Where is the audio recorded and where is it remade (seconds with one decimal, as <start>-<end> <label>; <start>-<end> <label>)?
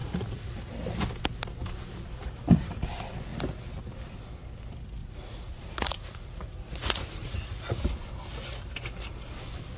0.0-0.6 remade; 0.6-5.0 recorded; 5.0-7.8 remade; 7.8-9.8 recorded